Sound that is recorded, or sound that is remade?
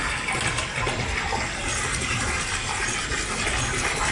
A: recorded